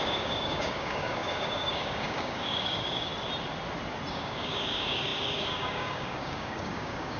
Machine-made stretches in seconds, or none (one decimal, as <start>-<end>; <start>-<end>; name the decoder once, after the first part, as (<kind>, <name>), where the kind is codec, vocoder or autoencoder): 0.0-3.1 (codec, DAC); 4.1-7.2